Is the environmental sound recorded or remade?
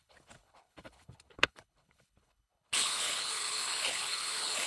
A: remade